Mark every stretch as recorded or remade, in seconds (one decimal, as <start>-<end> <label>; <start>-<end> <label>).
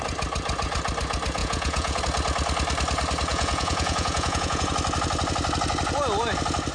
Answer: 0.0-1.4 recorded; 1.4-2.0 remade; 2.0-3.3 recorded; 3.3-4.7 remade; 4.7-6.7 recorded